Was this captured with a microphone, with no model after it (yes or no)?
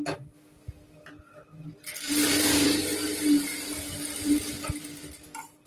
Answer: no